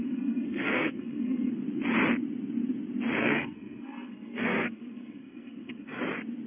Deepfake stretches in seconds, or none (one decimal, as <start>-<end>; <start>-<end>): 0.0-1.5; 3.2-6.0